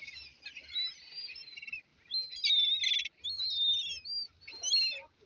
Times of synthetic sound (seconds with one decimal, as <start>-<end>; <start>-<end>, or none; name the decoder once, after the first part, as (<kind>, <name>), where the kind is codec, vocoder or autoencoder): none